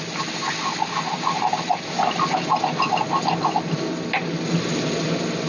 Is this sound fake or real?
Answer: real